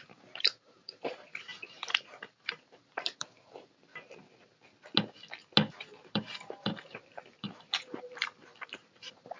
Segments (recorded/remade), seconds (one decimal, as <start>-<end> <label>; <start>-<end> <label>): 0.0-3.9 remade; 3.9-5.7 recorded; 5.7-9.4 remade